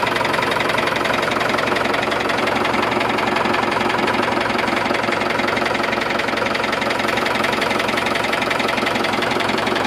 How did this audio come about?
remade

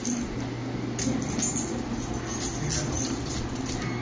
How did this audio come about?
recorded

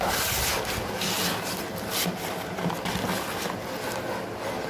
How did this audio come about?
recorded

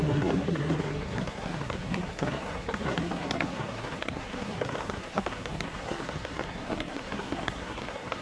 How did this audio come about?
remade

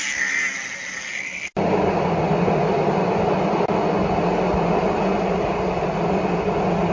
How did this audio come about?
recorded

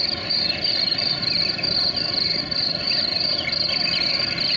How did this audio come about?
recorded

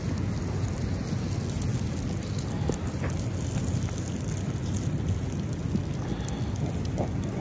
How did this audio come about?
recorded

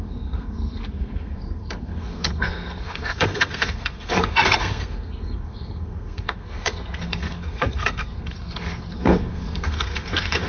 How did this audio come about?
remade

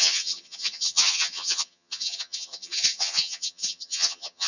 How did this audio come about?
remade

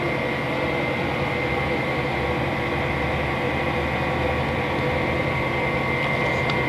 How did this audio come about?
recorded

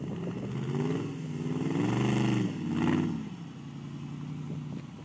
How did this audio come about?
recorded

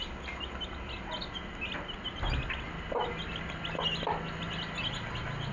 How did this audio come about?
recorded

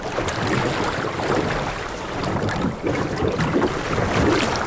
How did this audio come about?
remade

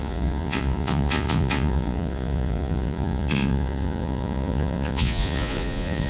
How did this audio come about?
remade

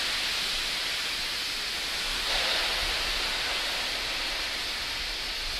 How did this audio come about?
recorded